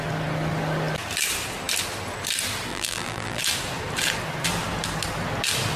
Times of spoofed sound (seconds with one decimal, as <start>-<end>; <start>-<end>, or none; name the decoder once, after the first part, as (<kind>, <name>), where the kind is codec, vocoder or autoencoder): 2.7-3.4 (vocoder, BigVGAN v2)

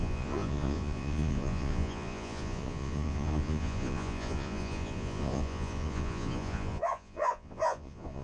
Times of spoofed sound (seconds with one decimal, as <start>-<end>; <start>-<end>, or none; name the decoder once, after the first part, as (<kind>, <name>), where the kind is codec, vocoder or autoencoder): 0.0-8.2 (vocoder, Vocos)

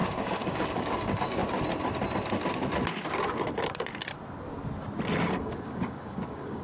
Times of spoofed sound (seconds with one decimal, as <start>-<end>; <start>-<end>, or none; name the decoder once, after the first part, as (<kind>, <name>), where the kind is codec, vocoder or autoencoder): 0.0-1.4 (codec, DAC); 5.4-6.6

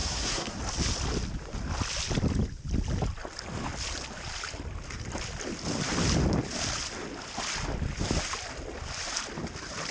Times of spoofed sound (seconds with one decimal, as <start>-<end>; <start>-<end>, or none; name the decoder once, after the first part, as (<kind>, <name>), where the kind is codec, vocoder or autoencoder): 0.0-0.6 (codec, SNAC)

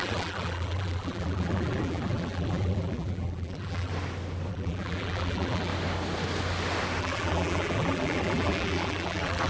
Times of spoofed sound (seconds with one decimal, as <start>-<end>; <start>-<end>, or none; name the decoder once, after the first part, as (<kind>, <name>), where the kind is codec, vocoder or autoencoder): 0.0-3.9 (vocoder, BigVGAN v2); 4.5-5.7; 7.0-9.5